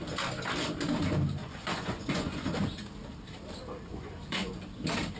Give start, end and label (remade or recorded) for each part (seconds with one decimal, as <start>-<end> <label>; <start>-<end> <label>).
0.0-1.4 recorded; 1.4-2.5 remade; 2.5-3.9 recorded; 3.9-4.5 remade; 4.5-5.2 recorded